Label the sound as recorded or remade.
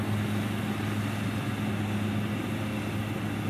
recorded